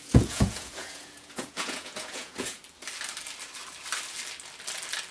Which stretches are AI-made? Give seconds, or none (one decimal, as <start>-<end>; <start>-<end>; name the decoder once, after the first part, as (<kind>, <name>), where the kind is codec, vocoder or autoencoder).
0.0-2.6 (vocoder, Vocos)